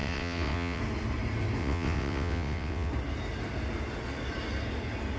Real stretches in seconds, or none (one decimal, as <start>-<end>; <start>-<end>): 0.8-1.6; 2.9-5.2